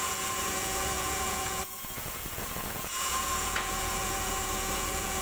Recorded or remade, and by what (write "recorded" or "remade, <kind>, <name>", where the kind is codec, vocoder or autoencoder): remade, vocoder, Vocos